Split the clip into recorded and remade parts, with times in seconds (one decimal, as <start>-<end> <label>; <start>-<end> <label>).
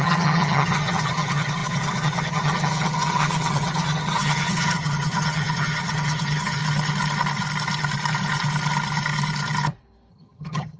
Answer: 0.0-6.6 remade; 6.6-10.1 recorded; 10.1-10.8 remade